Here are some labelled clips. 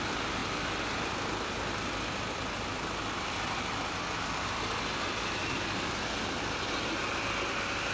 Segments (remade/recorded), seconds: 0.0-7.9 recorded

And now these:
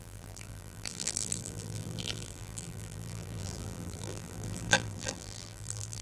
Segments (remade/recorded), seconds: 0.0-6.0 remade